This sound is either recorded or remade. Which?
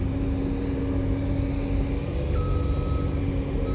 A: recorded